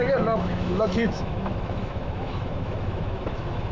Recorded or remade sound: remade